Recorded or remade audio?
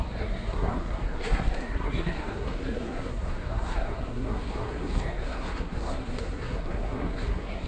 remade